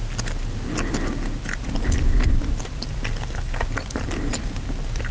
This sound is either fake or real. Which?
real